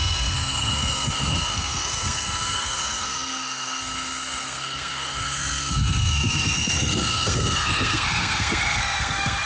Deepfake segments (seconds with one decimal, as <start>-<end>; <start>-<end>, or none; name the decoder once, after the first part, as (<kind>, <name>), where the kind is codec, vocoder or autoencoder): 0.0-9.5 (codec, SNAC)